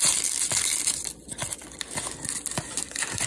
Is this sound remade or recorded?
remade